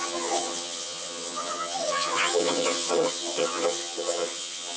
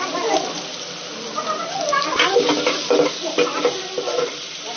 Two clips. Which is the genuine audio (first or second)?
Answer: second